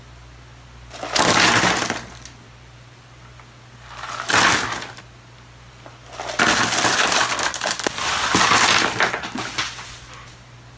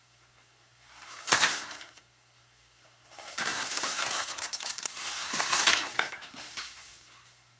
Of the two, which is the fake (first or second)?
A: second